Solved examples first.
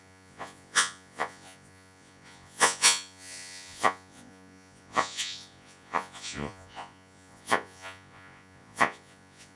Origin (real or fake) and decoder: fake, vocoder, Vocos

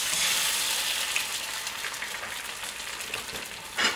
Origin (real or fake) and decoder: real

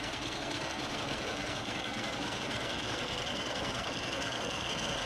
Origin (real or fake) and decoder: fake, codec, SNAC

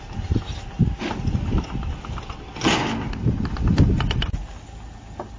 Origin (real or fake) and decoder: real